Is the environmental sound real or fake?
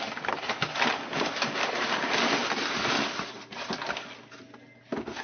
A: real